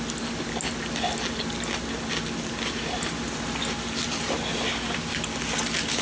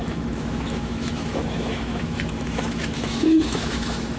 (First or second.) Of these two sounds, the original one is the first